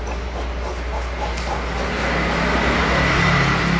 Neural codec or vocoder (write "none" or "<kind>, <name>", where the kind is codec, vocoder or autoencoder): none